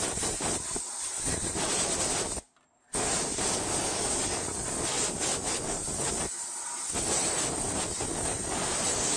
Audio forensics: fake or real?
real